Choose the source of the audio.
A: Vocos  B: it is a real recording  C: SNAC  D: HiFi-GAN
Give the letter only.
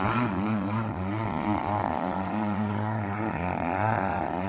A